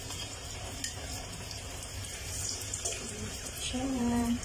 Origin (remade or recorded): remade